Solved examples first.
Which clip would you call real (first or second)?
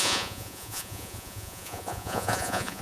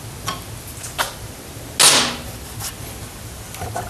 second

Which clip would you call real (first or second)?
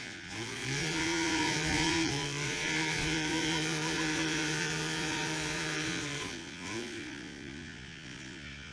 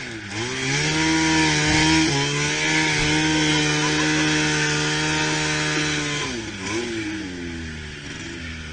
second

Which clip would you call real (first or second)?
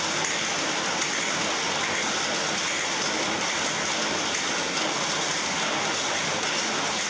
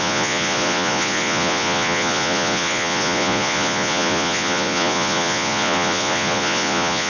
first